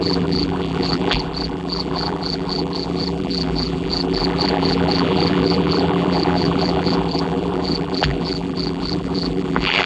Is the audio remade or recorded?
remade